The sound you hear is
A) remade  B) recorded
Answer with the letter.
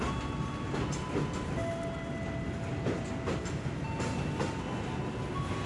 B